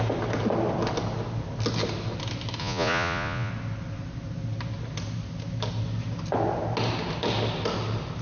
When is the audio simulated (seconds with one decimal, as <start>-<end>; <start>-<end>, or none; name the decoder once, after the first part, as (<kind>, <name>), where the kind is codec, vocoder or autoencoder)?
2.6-3.5 (vocoder, Vocos)